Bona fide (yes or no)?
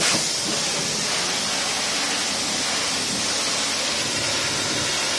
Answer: yes